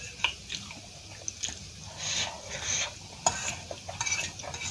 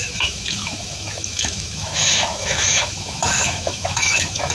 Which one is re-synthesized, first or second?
second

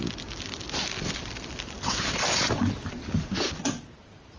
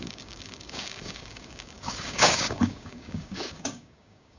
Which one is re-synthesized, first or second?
second